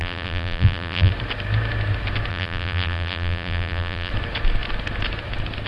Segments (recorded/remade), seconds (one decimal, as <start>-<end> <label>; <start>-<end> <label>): 0.0-1.1 remade; 1.1-2.3 recorded; 2.3-4.1 remade; 4.1-5.7 recorded